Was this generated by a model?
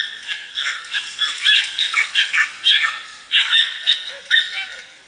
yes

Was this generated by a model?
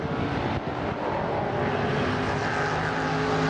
no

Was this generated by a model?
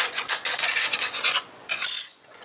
yes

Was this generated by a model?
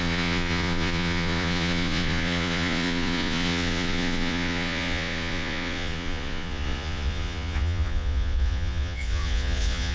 yes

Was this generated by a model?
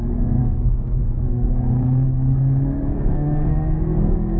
yes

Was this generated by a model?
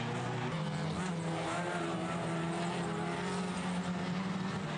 no